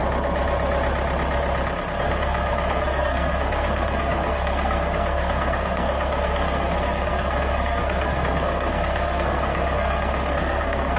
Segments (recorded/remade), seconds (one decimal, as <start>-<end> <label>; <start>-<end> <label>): 0.0-2.0 recorded; 2.0-11.0 remade